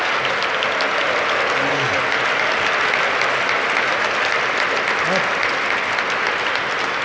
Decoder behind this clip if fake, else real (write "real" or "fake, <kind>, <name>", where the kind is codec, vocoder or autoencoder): real